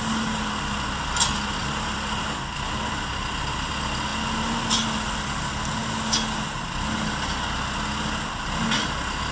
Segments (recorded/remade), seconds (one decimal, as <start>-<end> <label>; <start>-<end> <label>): 0.0-9.3 recorded